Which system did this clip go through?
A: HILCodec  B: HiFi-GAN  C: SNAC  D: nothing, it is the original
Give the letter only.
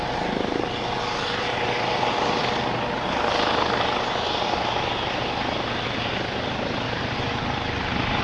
D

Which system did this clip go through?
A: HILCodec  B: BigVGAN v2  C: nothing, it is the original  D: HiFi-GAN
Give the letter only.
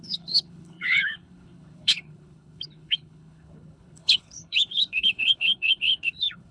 A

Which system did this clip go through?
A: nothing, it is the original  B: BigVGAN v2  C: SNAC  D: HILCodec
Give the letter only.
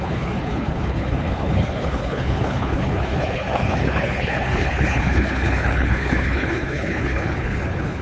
D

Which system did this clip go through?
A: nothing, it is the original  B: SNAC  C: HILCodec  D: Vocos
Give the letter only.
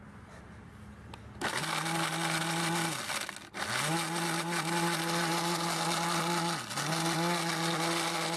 A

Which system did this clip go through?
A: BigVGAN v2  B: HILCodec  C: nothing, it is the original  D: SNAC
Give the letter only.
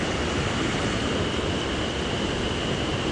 C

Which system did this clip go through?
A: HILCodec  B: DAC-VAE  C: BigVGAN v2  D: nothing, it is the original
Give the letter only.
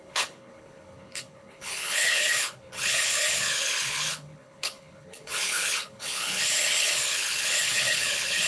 A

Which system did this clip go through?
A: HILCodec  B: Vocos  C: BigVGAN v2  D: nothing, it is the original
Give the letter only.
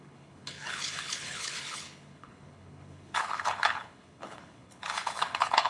A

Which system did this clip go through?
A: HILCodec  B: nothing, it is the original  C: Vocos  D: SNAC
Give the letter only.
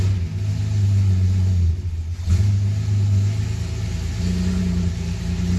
B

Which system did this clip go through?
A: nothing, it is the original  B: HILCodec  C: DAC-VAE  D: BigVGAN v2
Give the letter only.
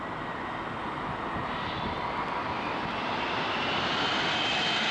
A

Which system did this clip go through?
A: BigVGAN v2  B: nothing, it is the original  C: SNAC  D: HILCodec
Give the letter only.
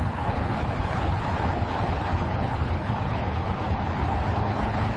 D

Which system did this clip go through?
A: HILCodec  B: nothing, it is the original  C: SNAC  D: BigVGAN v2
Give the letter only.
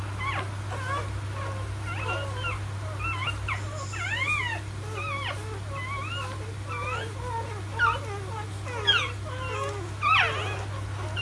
B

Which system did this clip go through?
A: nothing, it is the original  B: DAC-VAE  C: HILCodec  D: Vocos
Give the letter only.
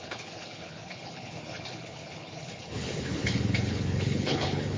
C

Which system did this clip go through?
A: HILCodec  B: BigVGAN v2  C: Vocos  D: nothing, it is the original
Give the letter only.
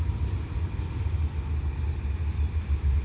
D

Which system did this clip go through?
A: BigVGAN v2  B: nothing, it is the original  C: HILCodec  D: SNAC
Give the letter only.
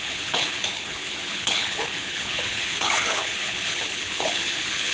C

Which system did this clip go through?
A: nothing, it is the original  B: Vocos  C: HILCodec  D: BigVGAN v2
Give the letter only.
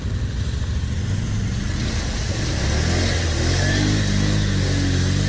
A